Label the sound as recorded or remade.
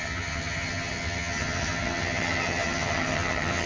remade